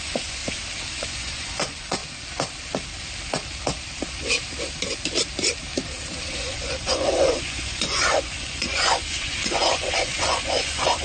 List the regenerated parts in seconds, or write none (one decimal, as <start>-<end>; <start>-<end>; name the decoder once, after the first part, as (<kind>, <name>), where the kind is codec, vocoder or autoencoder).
0.0-0.4 (vocoder, Vocos); 0.9-2.0; 6.3-11.0